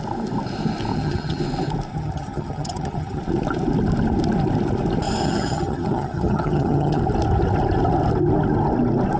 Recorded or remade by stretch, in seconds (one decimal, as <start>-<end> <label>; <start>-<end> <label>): 0.0-0.9 recorded; 0.9-1.4 remade; 1.4-1.9 recorded; 1.9-3.2 remade; 3.2-5.2 recorded; 5.2-7.0 remade; 7.0-9.2 recorded